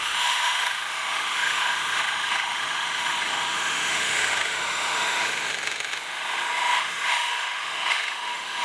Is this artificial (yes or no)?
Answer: yes